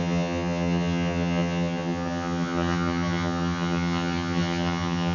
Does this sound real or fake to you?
fake